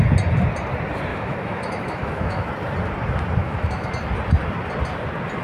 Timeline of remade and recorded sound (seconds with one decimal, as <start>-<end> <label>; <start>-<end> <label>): 0.0-1.1 recorded; 1.1-2.5 remade; 2.5-3.4 recorded; 3.4-3.9 remade; 3.9-5.4 recorded